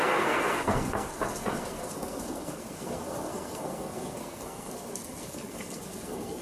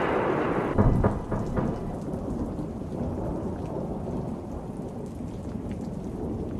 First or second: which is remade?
first